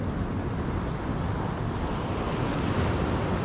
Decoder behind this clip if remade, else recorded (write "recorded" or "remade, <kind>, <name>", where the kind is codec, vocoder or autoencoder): recorded